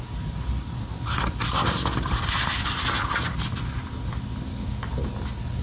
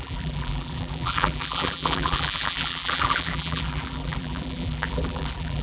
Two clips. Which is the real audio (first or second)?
first